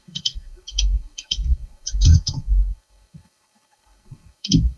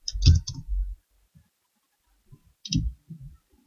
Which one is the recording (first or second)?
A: second